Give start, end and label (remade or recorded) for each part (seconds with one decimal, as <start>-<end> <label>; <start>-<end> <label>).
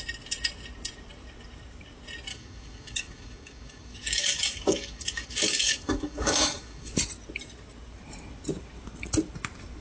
0.0-2.3 recorded; 2.3-6.9 remade; 6.9-9.8 recorded